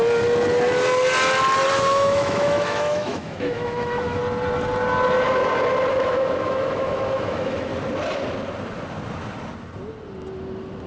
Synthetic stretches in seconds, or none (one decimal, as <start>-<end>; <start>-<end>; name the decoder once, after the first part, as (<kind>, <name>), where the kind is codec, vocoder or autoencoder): 1.7-4.2 (autoencoder, DAC-VAE); 5.9-7.7